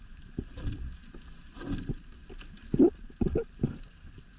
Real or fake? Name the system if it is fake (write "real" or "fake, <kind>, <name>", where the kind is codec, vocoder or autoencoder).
real